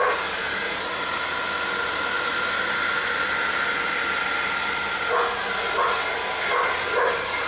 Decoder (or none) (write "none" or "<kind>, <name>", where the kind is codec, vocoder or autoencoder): none